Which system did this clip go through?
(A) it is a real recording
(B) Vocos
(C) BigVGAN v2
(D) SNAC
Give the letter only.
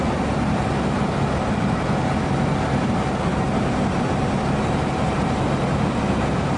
A